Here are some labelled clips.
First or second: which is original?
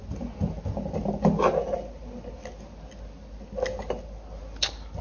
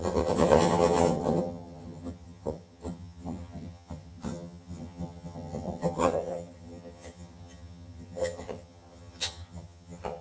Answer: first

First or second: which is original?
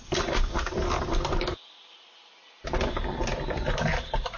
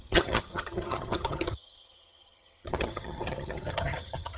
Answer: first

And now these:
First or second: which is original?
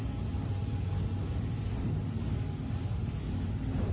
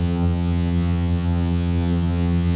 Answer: first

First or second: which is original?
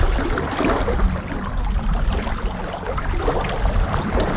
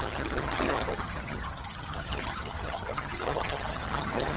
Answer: first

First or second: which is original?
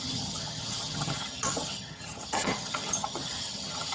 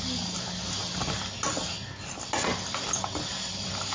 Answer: second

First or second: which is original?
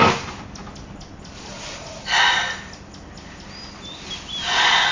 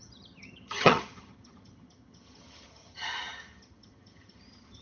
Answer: first